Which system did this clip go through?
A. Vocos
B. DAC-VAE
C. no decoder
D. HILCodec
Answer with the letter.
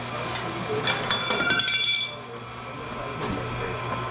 C